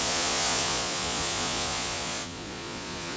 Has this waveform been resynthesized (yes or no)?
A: yes